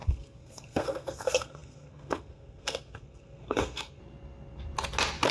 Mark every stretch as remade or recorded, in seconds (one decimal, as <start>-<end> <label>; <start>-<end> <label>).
0.0-4.0 remade; 4.0-5.3 recorded